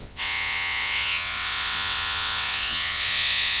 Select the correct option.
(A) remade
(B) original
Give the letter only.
A